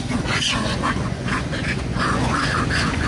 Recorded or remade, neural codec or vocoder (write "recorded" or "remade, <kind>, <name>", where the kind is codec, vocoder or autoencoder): remade, vocoder, Vocos